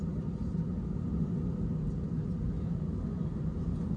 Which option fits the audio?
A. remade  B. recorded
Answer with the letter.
B